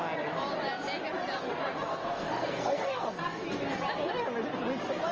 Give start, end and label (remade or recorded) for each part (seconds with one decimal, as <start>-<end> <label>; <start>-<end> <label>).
0.0-1.9 recorded; 1.9-3.2 remade; 3.2-5.1 recorded